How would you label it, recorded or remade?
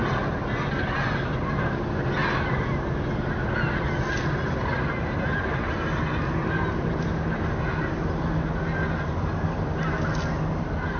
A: recorded